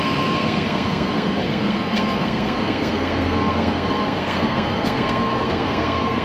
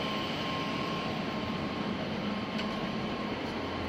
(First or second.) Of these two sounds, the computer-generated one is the first